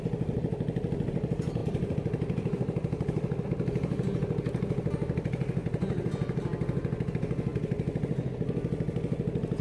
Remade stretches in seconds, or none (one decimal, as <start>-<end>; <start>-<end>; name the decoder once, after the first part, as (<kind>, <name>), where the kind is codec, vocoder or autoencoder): 1.6-3.4 (vocoder, BigVGAN v2); 5.6-7.1; 7.5-8.3